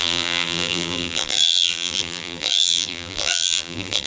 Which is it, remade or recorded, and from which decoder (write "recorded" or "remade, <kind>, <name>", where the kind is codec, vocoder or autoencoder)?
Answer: remade, vocoder, BigVGAN v2